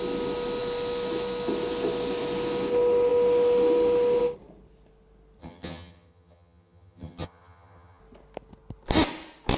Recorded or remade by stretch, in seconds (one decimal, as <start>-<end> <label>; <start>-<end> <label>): 0.0-5.4 recorded; 5.4-8.0 remade; 8.0-9.6 recorded